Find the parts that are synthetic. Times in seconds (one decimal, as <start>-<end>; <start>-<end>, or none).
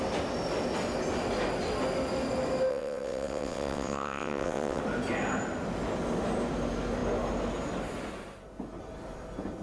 2.7-4.8